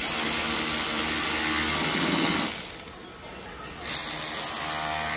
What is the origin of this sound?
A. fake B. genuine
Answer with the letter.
B